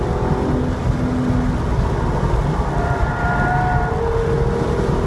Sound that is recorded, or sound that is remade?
recorded